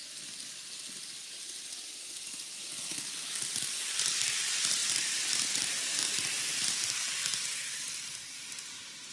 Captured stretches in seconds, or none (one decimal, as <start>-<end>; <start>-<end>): 0.0-1.8